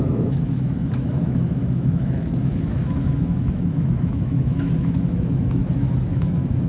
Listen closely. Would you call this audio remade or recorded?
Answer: remade